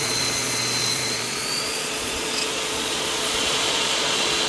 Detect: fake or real fake